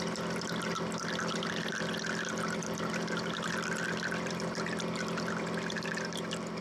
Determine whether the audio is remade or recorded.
remade